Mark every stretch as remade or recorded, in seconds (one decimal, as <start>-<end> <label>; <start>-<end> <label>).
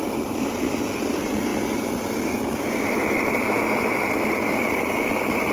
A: 0.0-5.5 recorded